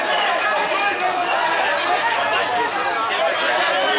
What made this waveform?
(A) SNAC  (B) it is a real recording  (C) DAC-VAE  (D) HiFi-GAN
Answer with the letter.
B